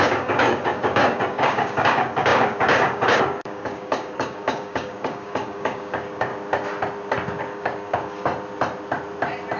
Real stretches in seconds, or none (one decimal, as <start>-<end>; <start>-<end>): 6.3-7.4; 8.3-9.6